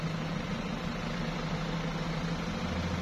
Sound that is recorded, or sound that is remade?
recorded